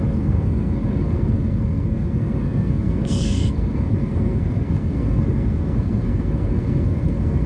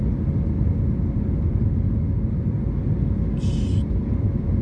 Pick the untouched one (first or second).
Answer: second